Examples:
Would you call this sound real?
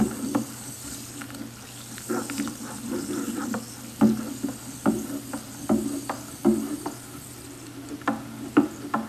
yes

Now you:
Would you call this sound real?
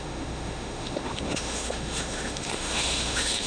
no